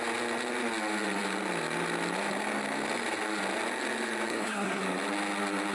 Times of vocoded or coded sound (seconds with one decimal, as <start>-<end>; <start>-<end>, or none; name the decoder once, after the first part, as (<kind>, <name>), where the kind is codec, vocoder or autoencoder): 4.3-4.8 (codec, SNAC)